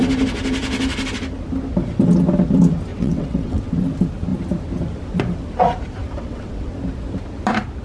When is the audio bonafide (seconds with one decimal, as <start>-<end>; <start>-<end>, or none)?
0.0-2.9; 3.7-6.0; 6.7-7.8

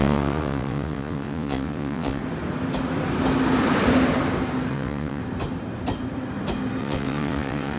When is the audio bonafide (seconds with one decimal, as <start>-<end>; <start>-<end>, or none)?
2.2-4.7; 5.2-6.8

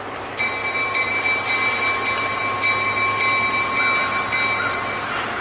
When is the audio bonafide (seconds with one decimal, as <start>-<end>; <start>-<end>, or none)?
0.0-5.4

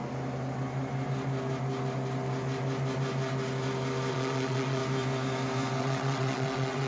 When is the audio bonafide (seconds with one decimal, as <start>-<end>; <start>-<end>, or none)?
0.0-4.1; 4.8-5.8

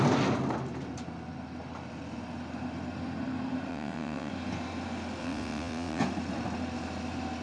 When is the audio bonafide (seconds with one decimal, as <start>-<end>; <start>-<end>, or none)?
0.0-3.7; 4.3-5.2; 6.0-7.4

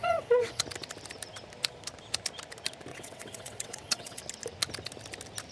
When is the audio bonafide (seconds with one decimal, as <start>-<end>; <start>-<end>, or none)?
0.6-2.9; 4.2-5.5

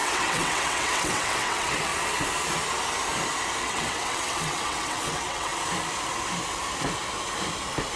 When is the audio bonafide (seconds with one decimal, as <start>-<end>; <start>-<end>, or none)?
1.9-3.6; 5.5-8.0

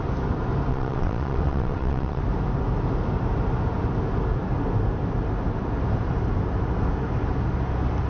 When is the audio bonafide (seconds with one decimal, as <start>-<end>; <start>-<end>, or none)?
0.0-0.7; 2.2-8.1